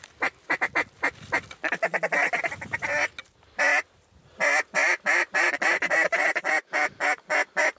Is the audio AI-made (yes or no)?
no